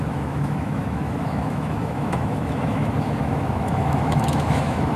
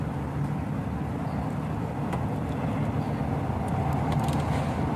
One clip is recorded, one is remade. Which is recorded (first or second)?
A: second